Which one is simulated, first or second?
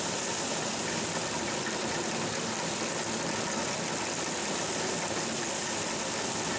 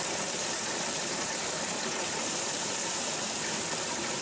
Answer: second